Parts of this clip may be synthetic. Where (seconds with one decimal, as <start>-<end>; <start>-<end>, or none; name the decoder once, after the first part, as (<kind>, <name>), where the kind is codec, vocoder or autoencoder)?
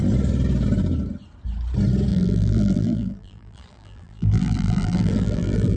2.1-5.8 (vocoder, BigVGAN v2)